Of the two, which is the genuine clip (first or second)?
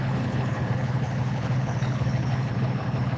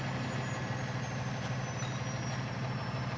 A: second